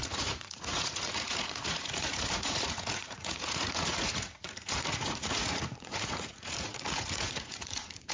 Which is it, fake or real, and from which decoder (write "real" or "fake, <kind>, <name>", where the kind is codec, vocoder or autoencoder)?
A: fake, vocoder, Vocos